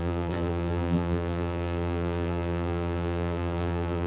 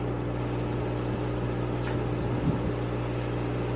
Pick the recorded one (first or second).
second